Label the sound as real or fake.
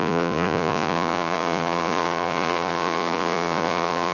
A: fake